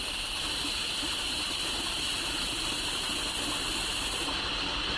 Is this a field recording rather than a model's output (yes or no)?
yes